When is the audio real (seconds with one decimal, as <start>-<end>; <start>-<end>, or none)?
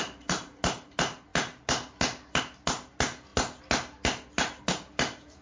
0.0-5.4